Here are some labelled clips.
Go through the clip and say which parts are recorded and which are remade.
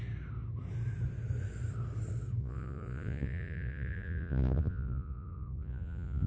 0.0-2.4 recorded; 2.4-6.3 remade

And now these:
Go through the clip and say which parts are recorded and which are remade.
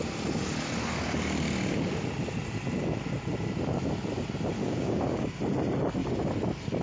0.0-4.6 recorded; 4.6-5.3 remade; 5.3-6.8 recorded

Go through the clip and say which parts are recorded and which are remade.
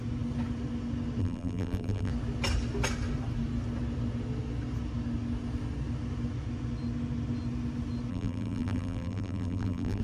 0.0-1.2 recorded; 1.2-2.1 remade; 2.1-8.1 recorded; 8.1-10.0 remade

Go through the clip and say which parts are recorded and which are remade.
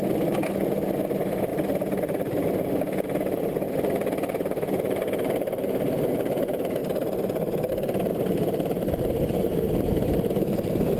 0.0-8.1 recorded; 8.1-9.2 remade; 9.2-11.0 recorded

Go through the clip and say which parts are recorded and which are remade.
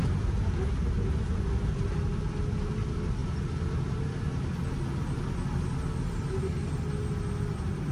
0.0-7.9 recorded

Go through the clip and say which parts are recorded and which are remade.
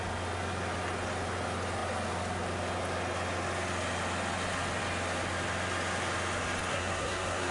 0.0-6.7 recorded; 6.7-7.5 remade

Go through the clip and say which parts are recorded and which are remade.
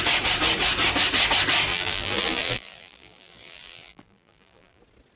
0.0-1.7 recorded; 1.7-4.8 remade; 4.8-5.2 recorded